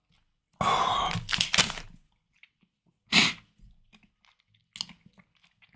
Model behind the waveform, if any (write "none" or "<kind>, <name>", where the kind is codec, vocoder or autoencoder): none